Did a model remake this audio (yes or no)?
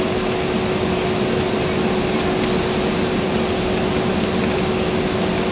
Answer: no